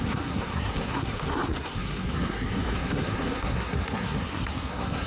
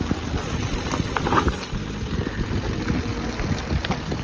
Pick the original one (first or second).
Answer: second